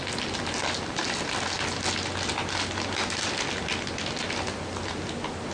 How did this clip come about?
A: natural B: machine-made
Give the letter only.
A